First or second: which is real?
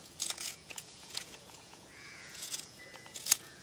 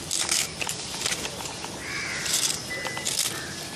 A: second